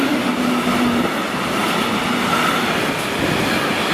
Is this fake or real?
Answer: real